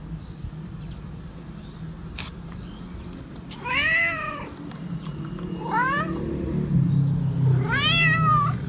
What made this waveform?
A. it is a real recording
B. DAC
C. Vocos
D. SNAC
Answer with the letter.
A